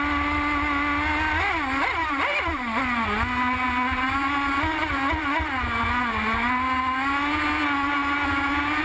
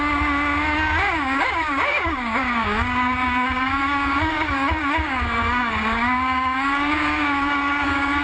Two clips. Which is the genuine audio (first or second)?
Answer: first